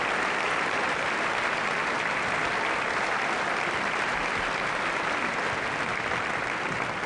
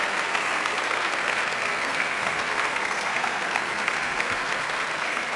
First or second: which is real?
first